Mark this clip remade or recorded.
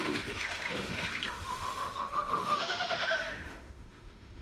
remade